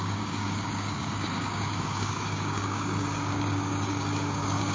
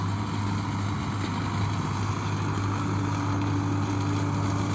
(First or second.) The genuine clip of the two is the second